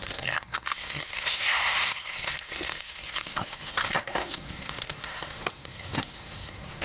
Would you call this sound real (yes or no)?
no